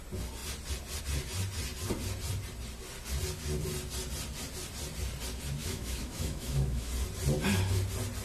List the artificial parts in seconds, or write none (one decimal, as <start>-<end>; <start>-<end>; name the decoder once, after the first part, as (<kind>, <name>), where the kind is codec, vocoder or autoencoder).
5.6-6.9 (autoencoder, DAC-VAE)